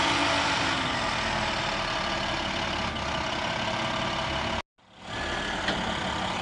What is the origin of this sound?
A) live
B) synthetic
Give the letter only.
A